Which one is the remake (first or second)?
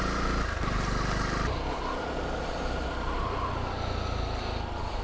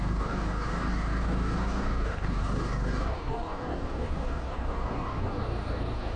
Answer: second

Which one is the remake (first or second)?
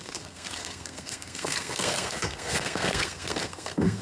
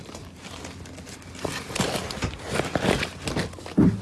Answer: first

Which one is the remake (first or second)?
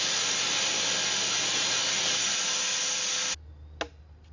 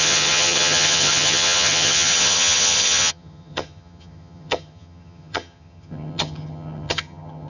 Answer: second